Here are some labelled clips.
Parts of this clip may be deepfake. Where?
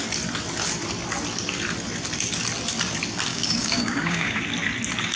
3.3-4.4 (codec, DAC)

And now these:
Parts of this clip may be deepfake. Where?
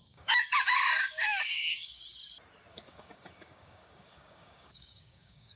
0.0-2.0 (codec, DAC); 2.7-5.6